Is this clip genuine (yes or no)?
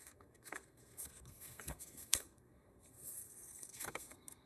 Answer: no